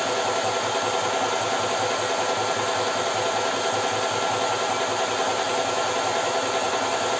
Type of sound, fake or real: real